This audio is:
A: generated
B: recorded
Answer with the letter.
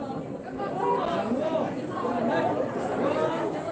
B